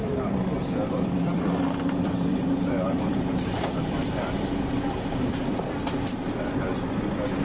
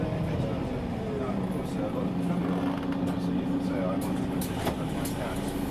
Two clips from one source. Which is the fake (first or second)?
first